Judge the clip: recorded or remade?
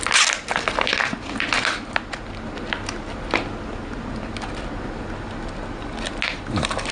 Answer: recorded